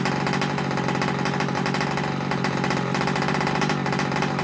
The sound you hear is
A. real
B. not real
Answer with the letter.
A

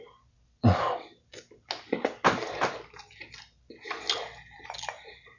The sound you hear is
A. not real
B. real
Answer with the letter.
B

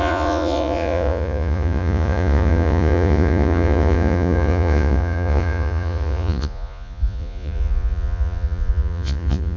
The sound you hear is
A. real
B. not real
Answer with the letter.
B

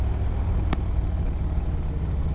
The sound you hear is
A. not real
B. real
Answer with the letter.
B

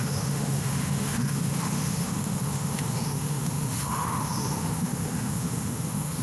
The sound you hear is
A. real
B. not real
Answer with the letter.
B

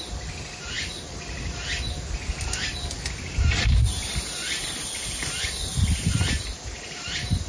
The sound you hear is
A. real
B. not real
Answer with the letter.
A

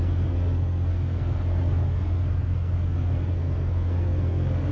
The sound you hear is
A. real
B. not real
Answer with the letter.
B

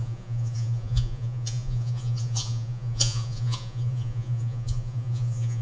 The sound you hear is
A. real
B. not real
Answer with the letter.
B